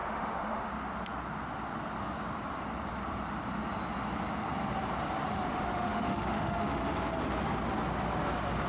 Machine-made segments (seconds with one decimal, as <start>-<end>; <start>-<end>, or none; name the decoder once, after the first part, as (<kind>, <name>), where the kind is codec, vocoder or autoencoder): 0.0-0.7 (autoencoder, DAC-VAE); 5.5-6.8